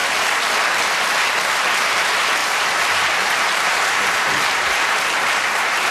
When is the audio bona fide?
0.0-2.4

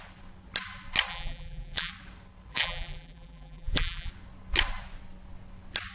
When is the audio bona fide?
0.0-1.1; 1.9-2.5; 4.1-5.9

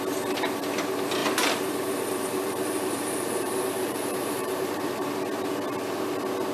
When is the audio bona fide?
0.0-1.2; 5.1-6.5